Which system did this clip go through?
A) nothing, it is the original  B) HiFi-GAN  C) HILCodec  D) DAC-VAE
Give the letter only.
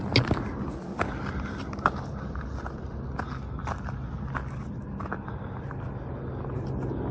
A